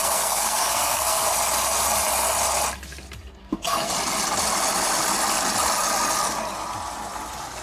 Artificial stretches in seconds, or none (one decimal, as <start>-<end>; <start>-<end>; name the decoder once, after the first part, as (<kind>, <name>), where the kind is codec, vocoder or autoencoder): 0.0-1.3 (codec, SNAC); 3.4-3.9